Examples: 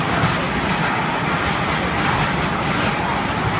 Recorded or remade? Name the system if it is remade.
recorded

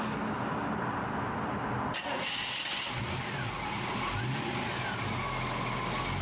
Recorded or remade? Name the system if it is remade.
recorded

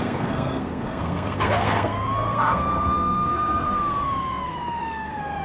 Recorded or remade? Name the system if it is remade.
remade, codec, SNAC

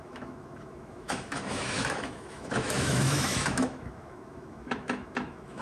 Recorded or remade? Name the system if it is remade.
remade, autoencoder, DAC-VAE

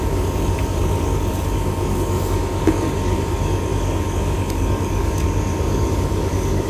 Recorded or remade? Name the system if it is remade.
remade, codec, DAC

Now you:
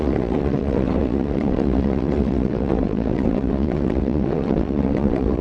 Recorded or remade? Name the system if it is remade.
remade, vocoder, WaveNeXt